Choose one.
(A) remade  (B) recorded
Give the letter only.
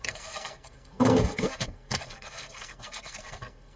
A